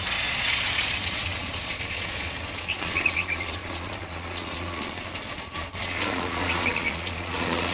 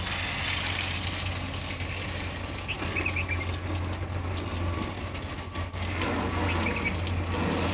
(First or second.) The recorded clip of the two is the second